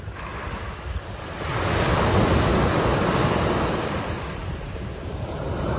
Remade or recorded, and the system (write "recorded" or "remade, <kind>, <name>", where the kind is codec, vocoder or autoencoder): recorded